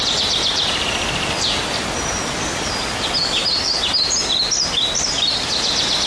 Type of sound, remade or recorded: recorded